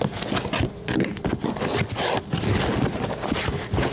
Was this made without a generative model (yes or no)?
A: yes